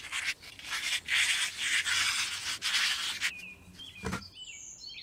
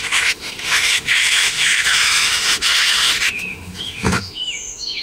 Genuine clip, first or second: first